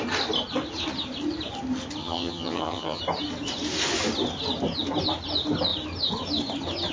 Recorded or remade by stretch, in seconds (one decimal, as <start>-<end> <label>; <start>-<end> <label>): 0.0-2.0 recorded; 2.0-3.0 remade; 3.0-6.9 recorded